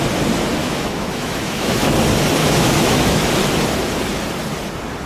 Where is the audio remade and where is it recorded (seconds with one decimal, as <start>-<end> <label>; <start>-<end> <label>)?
0.0-0.6 recorded; 0.6-1.9 remade; 1.9-2.4 recorded; 2.4-3.3 remade; 3.3-5.1 recorded

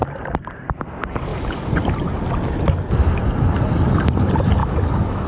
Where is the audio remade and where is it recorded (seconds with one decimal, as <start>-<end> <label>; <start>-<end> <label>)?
0.0-4.6 recorded; 4.6-5.3 remade

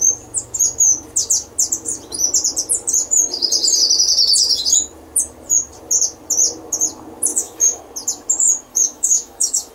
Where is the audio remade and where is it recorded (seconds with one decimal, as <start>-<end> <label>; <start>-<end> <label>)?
0.0-7.3 recorded; 7.3-7.8 remade; 7.8-8.7 recorded; 8.7-9.7 remade

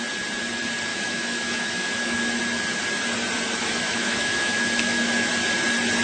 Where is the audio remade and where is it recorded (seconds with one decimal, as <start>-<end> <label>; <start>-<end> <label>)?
0.0-0.9 recorded; 0.9-2.4 remade; 2.4-3.6 recorded; 3.6-5.3 remade; 5.3-6.0 recorded

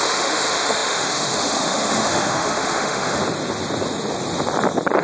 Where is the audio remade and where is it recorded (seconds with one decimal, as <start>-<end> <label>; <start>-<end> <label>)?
0.0-3.2 remade; 3.2-5.0 recorded

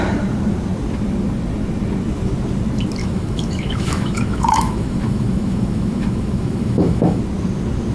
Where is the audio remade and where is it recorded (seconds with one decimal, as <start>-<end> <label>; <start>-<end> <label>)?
0.0-3.0 recorded; 3.0-7.2 remade; 7.2-7.9 recorded

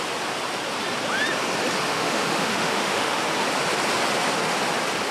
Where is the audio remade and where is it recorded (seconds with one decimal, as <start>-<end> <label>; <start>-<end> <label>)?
0.0-1.9 recorded; 1.9-3.2 remade; 3.2-5.1 recorded

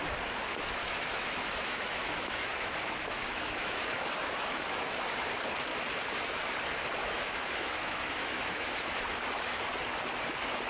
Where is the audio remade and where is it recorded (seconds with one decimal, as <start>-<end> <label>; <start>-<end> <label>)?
0.0-0.8 recorded; 0.8-5.1 remade; 5.1-7.0 recorded; 7.0-9.6 remade; 9.6-10.7 recorded